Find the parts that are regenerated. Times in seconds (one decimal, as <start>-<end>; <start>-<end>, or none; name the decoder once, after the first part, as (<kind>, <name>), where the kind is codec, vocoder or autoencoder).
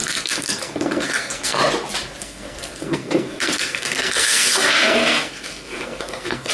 0.0-1.6 (codec, SNAC); 2.2-6.5